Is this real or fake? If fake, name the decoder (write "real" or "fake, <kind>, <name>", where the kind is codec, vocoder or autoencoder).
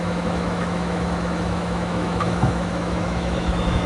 fake, autoencoder, DAC-VAE